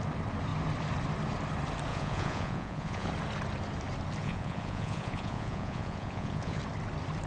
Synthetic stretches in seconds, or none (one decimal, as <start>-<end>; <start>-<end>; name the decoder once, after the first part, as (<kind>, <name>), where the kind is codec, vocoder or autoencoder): 1.9-3.1 (vocoder, Vocos); 4.2-6.6